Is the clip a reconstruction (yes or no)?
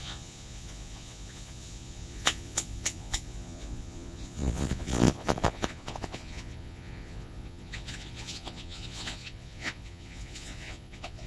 yes